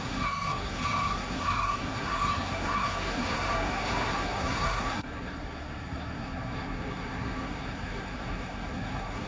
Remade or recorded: remade